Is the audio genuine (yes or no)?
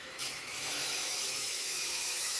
no